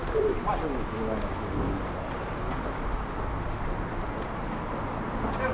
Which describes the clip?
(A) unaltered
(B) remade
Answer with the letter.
A